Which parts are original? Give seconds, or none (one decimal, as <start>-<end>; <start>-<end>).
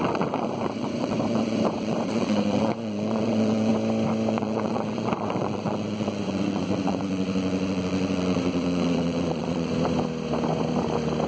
3.7-4.3; 9.7-11.3